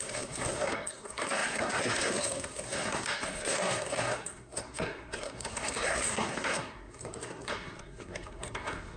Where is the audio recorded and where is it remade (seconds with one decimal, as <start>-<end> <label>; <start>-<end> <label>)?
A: 0.0-9.0 remade